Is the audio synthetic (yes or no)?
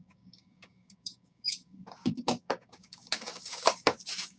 yes